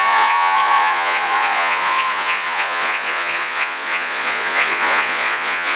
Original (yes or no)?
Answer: no